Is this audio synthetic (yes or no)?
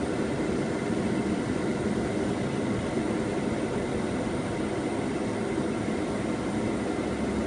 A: no